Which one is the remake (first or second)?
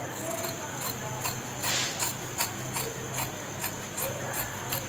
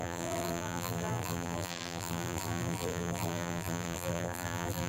second